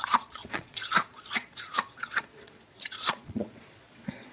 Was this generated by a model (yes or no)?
yes